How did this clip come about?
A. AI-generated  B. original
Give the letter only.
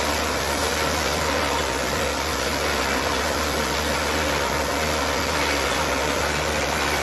A